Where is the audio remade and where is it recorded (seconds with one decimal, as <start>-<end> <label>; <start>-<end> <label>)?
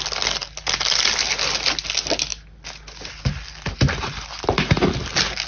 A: 0.0-5.5 recorded